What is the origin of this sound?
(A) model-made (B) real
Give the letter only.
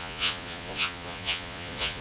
A